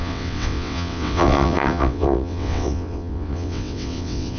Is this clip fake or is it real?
fake